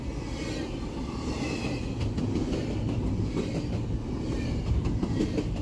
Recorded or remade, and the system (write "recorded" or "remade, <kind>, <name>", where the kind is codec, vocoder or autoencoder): recorded